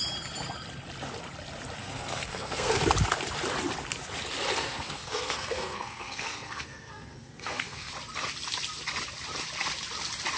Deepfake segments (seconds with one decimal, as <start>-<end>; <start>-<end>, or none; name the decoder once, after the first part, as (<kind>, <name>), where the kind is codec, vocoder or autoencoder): 1.8-2.8 (codec, SNAC); 4.5-7.9